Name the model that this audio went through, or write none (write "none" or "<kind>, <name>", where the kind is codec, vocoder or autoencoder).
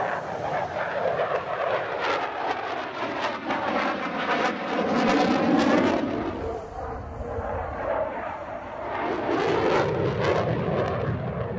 none